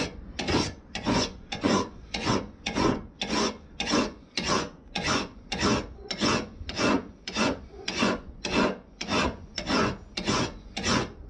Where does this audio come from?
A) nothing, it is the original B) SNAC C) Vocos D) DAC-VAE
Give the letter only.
C